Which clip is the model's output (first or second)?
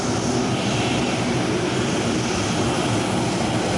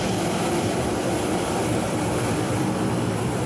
second